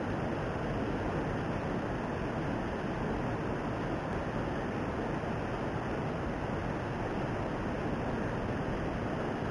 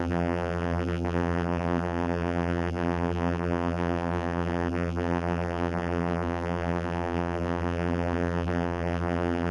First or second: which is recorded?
first